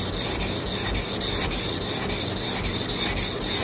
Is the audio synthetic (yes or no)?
no